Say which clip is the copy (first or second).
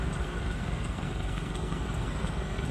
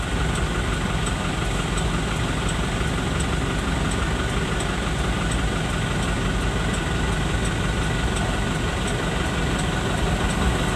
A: first